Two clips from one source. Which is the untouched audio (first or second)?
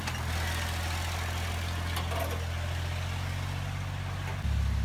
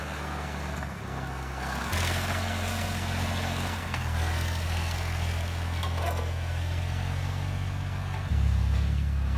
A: first